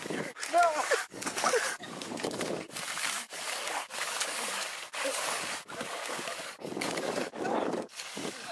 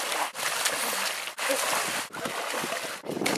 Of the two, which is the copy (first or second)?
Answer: first